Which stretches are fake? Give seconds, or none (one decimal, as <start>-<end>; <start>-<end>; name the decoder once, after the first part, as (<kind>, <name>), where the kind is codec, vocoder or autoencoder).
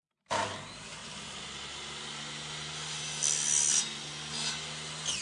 none